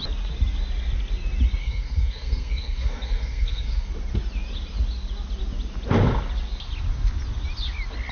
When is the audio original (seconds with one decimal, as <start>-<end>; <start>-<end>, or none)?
0.0-1.6; 3.9-8.1

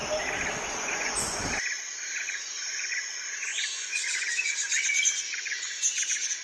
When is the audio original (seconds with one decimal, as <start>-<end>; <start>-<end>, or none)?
0.0-0.8; 1.4-2.2

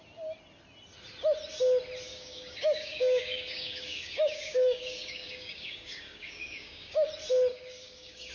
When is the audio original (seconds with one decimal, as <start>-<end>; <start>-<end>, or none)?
0.0-2.1; 7.1-7.5